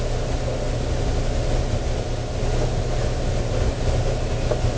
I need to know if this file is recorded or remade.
recorded